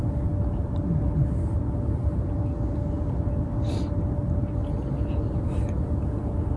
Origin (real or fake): real